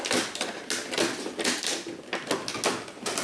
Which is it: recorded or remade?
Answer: recorded